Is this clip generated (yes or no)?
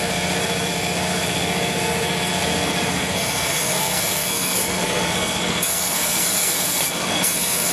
yes